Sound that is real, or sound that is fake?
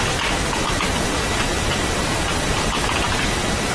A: fake